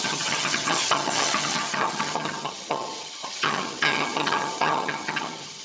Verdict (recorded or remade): remade